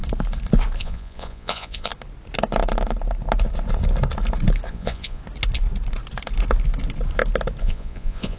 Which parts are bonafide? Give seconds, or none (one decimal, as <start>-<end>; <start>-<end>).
0.0-0.8; 1.9-4.7; 5.2-7.6